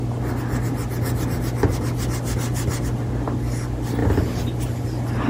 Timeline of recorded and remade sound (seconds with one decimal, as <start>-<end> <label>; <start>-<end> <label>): 0.0-5.3 recorded